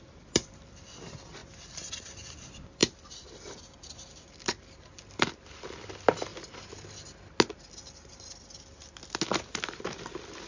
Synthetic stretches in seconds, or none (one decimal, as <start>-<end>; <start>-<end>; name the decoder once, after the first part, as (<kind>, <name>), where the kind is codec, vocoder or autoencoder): 0.0-1.4 (vocoder, BigVGAN v2); 2.3-6.3; 9.3-10.5